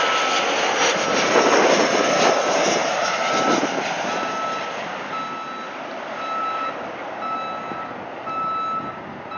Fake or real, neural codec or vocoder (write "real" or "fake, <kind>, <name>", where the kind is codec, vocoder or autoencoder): real